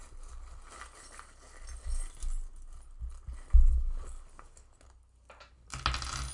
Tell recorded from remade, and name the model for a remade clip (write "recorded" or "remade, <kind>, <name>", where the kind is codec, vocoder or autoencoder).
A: recorded